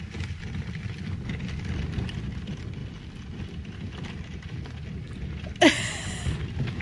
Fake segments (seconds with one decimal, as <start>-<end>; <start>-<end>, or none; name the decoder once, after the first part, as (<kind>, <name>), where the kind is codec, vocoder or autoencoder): none

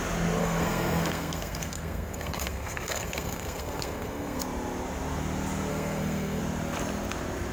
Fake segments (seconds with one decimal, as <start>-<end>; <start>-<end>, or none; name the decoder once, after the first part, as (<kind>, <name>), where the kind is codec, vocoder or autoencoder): 0.4-4.4 (codec, SNAC); 5.7-6.4

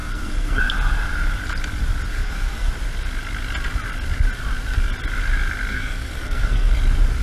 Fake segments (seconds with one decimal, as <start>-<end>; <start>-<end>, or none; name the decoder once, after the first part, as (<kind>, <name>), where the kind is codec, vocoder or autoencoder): 0.0-0.6 (codec, SNAC); 2.1-2.7; 5.7-6.8

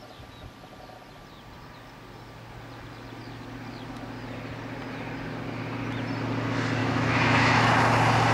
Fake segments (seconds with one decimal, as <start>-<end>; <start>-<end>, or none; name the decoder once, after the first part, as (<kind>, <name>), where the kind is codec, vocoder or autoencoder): 6.8-7.7 (autoencoder, DAC-VAE)

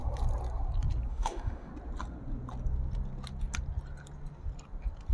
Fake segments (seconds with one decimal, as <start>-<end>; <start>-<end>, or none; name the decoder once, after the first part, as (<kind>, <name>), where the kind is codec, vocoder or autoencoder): 1.1-1.7 (autoencoder, DAC-VAE)